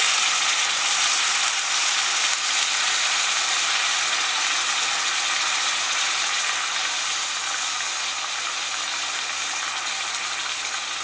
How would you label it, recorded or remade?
recorded